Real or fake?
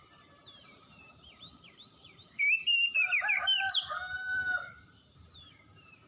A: fake